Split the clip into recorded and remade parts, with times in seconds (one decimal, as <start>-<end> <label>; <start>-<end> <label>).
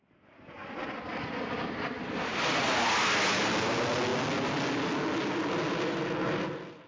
0.0-6.9 recorded